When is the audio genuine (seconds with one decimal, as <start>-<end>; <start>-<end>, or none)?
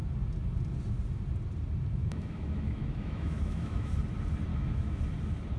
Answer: 0.0-2.0; 3.9-4.5; 5.0-5.6